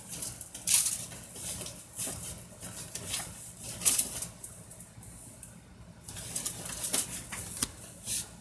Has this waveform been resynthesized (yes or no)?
no